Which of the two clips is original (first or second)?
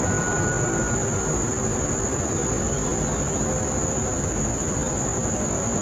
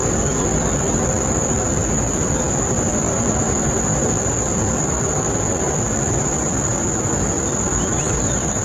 first